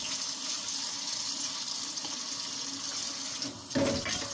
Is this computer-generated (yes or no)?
no